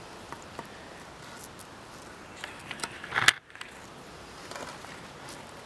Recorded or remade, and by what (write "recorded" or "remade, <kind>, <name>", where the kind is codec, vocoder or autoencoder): recorded